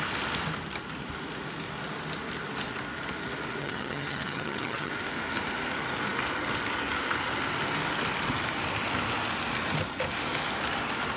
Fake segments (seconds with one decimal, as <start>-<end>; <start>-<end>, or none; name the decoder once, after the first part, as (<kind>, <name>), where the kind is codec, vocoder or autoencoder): 3.6-4.9 (vocoder, HiFi-GAN)